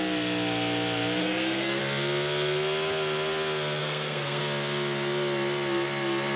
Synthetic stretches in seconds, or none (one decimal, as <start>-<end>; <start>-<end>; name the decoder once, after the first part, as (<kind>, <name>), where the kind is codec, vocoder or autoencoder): 1.2-1.8 (codec, SNAC); 3.8-4.4